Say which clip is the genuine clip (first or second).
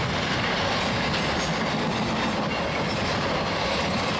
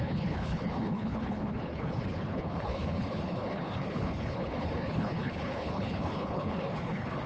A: first